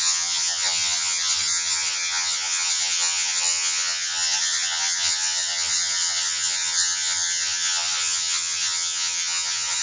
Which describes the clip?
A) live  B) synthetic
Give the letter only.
B